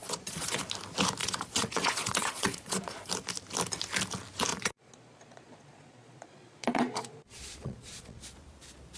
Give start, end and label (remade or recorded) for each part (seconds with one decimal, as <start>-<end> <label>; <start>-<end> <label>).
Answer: 0.0-0.6 remade; 0.6-1.2 recorded; 1.2-3.1 remade; 3.1-4.5 recorded; 4.5-8.2 remade; 8.2-9.0 recorded